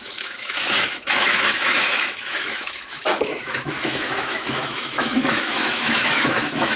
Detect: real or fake fake